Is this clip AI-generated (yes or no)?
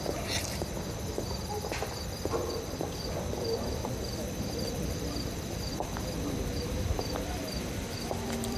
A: yes